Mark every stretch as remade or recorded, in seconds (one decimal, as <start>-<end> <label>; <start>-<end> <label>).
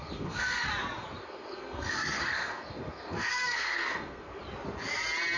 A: 0.0-0.7 remade; 0.7-1.2 recorded; 1.2-4.4 remade; 4.4-5.4 recorded